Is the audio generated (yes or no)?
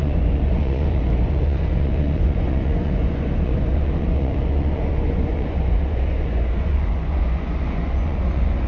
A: yes